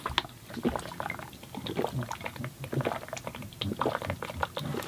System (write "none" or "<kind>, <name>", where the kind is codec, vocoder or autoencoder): none